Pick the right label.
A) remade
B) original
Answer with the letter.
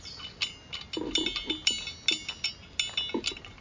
B